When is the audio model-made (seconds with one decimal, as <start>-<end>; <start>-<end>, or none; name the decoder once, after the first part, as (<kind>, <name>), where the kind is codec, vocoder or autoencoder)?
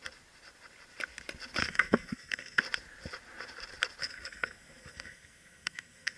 1.6-2.6 (codec, SNAC); 4.0-6.2